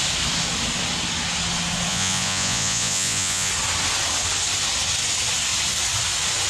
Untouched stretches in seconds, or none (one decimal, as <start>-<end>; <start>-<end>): 0.0-1.9; 3.5-6.5